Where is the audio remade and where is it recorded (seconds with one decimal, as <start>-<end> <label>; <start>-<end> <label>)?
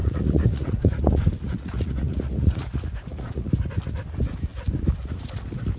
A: 0.0-3.5 remade; 3.5-5.8 recorded